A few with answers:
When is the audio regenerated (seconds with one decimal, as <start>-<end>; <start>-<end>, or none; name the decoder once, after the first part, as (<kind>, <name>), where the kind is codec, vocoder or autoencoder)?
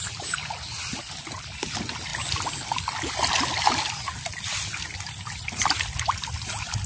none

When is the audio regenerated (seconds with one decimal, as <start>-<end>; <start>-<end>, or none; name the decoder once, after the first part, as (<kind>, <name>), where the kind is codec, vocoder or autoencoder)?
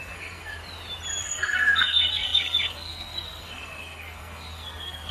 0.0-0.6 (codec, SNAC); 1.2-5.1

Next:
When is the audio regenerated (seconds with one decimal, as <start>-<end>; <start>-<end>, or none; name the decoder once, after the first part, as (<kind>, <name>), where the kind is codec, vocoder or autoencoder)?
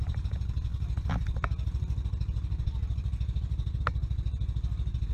none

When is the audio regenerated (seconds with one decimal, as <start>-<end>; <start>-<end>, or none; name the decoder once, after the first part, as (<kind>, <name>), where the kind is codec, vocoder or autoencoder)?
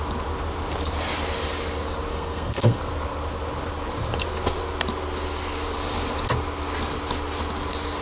2.1-2.8 (codec, SNAC)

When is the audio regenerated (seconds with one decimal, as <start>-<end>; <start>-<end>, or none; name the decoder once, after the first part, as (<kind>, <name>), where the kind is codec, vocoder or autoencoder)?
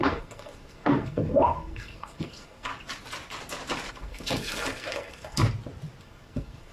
0.0-2.7 (codec, SNAC); 3.9-5.4; 6.0-6.7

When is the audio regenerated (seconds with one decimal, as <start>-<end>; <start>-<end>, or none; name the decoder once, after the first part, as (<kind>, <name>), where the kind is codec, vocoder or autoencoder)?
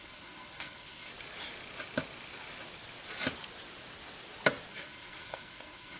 0.0-1.1 (codec, SNAC); 4.7-6.0